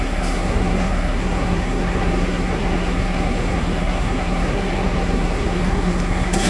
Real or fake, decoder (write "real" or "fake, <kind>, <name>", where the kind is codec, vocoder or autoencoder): fake, codec, SNAC